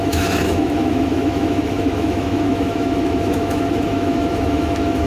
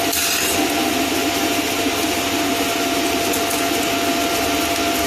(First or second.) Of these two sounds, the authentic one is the second